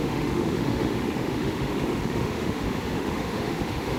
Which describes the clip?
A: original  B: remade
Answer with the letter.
B